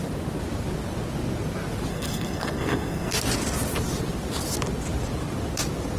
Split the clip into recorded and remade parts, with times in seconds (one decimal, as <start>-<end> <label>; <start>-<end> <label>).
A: 0.0-1.9 recorded; 1.9-3.1 remade; 3.1-6.0 recorded

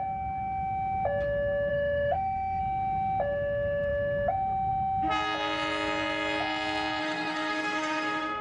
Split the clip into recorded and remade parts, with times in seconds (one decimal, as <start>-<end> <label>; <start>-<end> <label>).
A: 0.0-1.7 recorded; 1.7-2.6 remade; 2.6-7.0 recorded; 7.0-8.4 remade